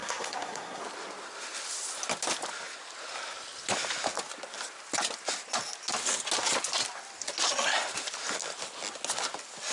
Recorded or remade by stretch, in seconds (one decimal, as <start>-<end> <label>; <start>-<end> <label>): 0.0-0.8 remade; 0.8-9.7 recorded